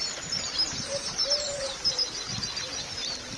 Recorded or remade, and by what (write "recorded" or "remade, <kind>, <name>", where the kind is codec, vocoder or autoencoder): recorded